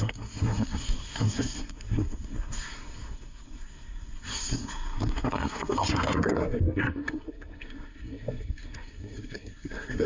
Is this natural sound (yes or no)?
no